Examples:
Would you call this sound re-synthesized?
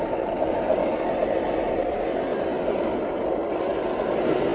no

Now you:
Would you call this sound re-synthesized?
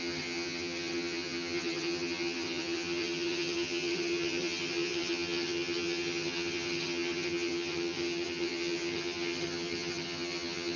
yes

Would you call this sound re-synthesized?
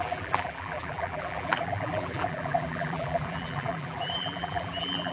yes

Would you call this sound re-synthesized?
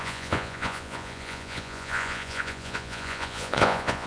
yes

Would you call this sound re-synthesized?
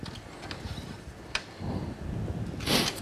no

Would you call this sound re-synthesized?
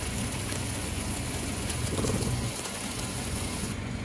yes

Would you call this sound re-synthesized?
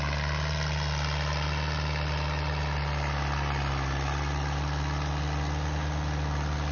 no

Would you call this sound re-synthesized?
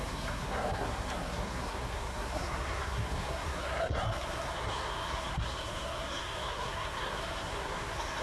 yes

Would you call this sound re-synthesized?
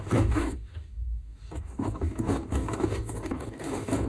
yes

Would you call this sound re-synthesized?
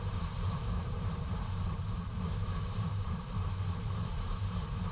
yes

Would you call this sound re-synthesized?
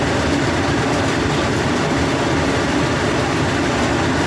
yes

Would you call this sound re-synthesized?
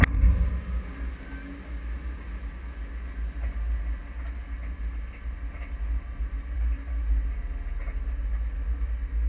no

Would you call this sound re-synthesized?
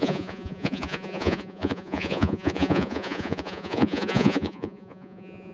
yes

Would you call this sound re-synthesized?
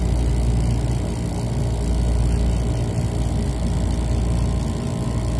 no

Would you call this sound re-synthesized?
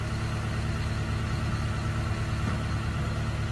no